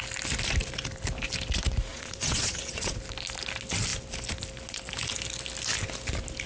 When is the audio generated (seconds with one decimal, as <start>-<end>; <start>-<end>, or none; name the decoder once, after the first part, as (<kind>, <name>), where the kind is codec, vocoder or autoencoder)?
1.9-3.0 (vocoder, Vocos)